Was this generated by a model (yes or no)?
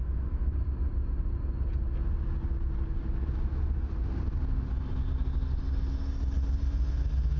no